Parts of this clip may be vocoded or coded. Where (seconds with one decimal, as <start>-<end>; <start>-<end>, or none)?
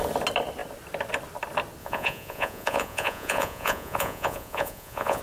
1.8-5.2